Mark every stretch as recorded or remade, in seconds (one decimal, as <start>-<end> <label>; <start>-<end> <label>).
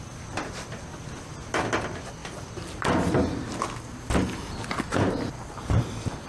0.0-6.3 recorded